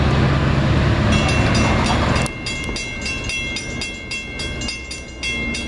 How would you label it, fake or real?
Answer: real